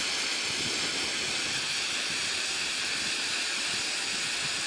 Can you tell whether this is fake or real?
real